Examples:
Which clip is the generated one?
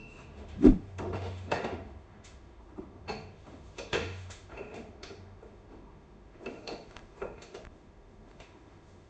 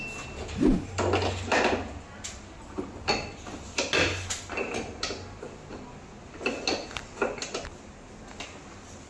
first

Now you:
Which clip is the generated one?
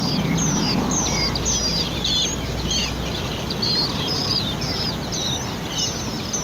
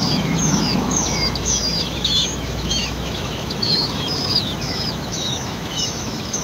second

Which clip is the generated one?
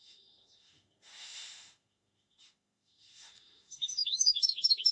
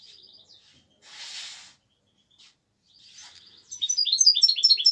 first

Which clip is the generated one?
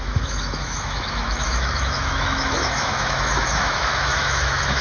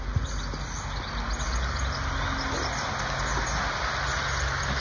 first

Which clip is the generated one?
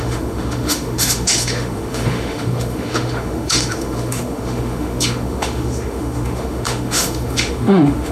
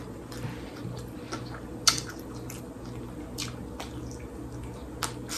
first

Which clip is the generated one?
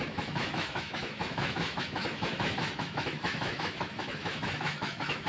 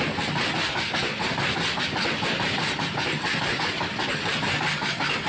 first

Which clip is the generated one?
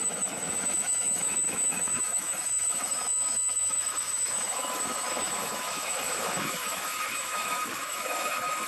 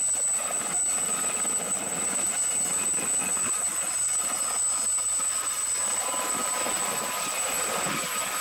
first